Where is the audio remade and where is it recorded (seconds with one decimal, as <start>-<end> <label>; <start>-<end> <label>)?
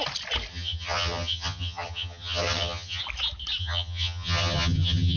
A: 0.0-0.5 recorded; 0.5-3.0 remade; 3.0-3.6 recorded; 3.6-5.2 remade